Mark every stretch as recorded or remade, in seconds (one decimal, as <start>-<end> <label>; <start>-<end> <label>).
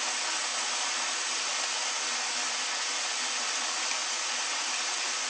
0.0-4.0 recorded; 4.0-5.3 remade